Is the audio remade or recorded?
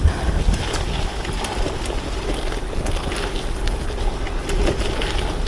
recorded